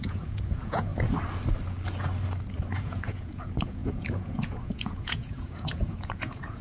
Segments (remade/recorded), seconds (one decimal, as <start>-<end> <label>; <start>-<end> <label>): 0.0-0.9 remade; 0.9-2.8 recorded; 2.8-6.6 remade